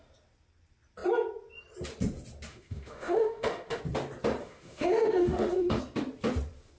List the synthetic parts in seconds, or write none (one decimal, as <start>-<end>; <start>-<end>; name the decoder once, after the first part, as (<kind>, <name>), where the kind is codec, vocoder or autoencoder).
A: 2.5-3.8 (autoencoder, DAC-VAE); 4.4-5.8